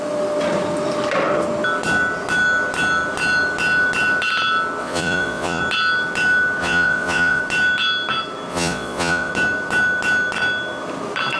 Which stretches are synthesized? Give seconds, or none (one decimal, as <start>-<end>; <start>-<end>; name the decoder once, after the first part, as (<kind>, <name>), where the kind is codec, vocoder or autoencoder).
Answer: 4.8-5.6 (vocoder, Vocos); 6.6-7.4; 8.5-9.3